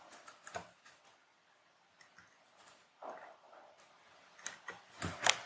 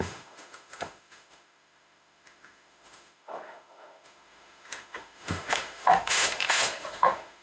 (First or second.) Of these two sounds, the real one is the first